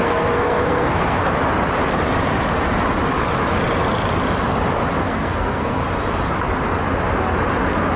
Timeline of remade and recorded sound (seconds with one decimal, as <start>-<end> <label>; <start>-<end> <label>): 0.0-1.2 remade; 1.2-5.0 recorded; 5.0-5.8 remade; 5.8-8.0 recorded

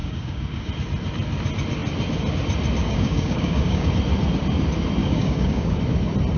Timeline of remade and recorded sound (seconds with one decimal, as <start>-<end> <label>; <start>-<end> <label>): 0.0-0.7 remade; 0.7-2.8 recorded; 2.8-3.9 remade; 3.9-5.0 recorded; 5.0-5.8 remade; 5.8-6.4 recorded

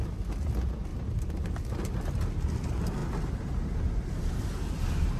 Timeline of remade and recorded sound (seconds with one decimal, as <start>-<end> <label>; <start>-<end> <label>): 0.0-5.2 recorded